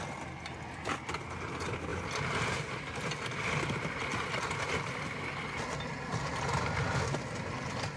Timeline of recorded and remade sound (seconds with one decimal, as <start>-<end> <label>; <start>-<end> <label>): 0.0-8.0 recorded